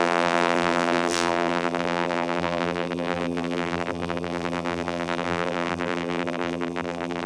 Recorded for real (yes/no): no